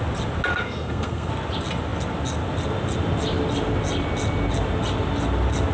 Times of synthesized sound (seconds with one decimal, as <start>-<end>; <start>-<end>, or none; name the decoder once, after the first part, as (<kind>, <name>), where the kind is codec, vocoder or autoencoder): 0.5-1.3 (codec, SNAC)